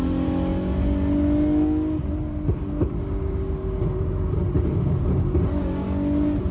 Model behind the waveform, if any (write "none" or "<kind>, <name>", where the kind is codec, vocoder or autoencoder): none